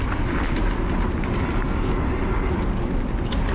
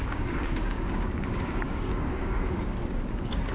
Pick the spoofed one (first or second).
second